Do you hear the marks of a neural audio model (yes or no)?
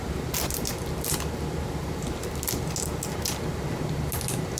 no